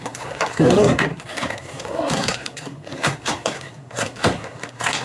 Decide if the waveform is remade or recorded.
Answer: remade